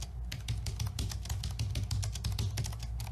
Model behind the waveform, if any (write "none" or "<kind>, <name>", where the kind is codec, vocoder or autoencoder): none